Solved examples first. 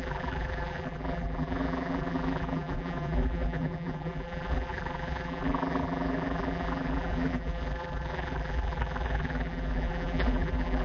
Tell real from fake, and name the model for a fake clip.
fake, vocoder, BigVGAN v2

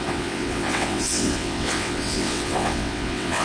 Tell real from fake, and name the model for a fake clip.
fake, vocoder, WaveNeXt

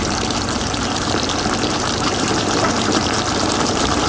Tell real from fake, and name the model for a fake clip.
fake, vocoder, BigVGAN v2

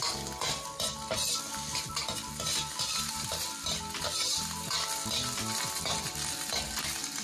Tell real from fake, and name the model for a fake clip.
real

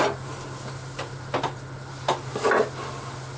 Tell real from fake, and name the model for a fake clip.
real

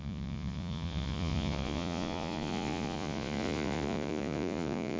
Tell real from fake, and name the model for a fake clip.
fake, vocoder, Vocos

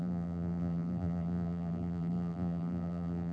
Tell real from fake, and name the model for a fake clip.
fake, vocoder, BigVGAN v2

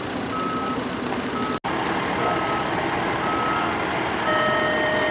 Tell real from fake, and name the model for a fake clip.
real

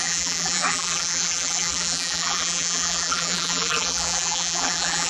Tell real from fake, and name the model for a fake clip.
fake, vocoder, BigVGAN v2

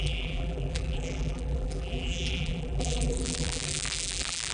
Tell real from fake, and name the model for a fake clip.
fake, vocoder, BigVGAN v2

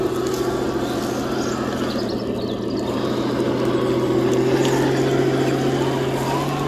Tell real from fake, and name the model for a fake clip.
real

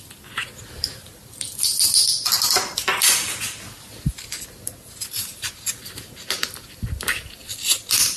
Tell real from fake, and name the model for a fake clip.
real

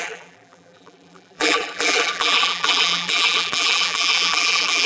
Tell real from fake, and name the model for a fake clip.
fake, vocoder, BigVGAN v2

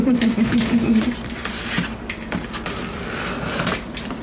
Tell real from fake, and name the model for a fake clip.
fake, vocoder, BigVGAN v2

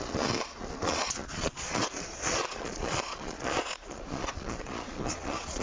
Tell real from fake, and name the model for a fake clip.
fake, vocoder, Vocos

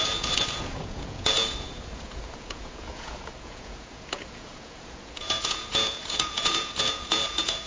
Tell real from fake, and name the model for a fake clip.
fake, vocoder, Vocos